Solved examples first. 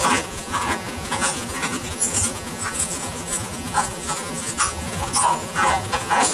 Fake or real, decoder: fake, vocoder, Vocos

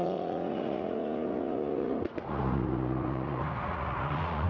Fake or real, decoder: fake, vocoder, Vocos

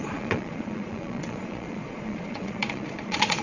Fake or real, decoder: fake, vocoder, Vocos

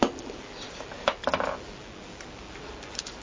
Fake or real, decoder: real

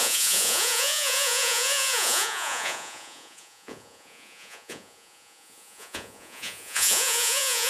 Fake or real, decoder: fake, vocoder, Vocos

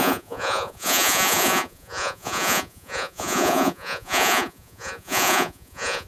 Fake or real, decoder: fake, vocoder, Vocos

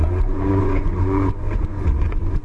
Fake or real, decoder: fake, vocoder, Vocos